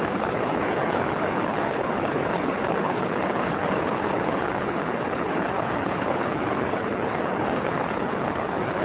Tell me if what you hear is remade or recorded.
remade